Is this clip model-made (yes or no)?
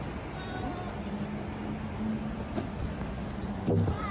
no